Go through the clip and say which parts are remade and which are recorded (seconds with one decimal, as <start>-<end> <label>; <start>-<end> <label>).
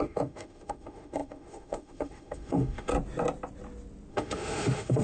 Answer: 0.0-2.9 remade; 2.9-4.1 recorded; 4.1-5.0 remade